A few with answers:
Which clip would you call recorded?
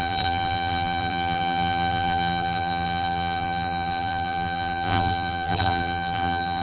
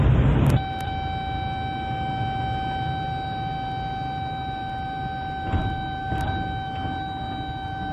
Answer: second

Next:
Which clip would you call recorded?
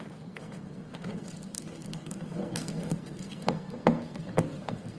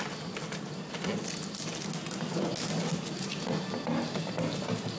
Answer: second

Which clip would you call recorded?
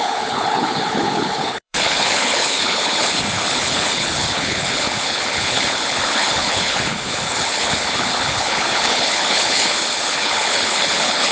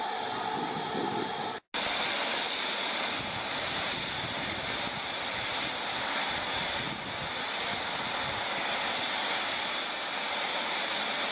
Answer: second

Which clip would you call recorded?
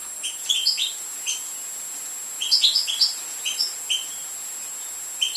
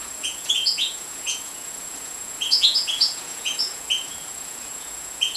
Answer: first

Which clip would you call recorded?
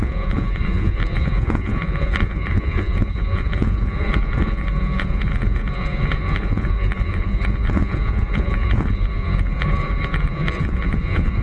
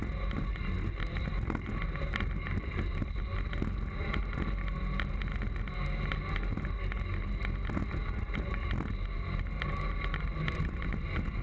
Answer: second